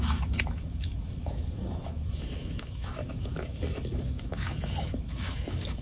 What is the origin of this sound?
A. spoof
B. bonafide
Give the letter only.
A